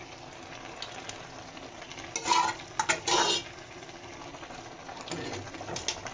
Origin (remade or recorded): recorded